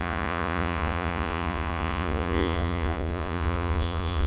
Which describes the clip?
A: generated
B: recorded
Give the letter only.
A